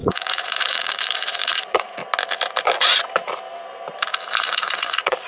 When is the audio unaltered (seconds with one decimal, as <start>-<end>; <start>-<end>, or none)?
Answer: 2.0-4.4